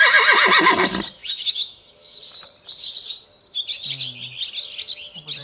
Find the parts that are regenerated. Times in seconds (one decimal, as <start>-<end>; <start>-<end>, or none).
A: 1.2-2.2